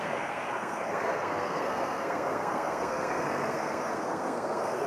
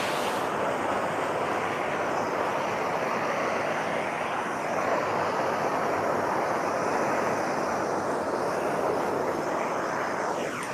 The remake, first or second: first